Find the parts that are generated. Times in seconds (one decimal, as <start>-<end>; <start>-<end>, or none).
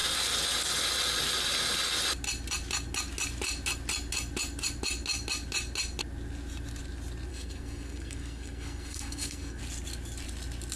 7.3-9.6